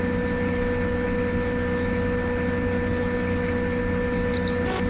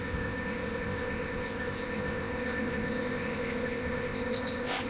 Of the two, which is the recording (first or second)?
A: first